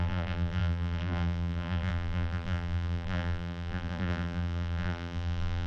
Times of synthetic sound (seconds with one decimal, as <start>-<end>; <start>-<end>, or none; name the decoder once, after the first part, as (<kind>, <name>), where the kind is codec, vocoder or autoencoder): 0.0-5.7 (vocoder, BigVGAN v2)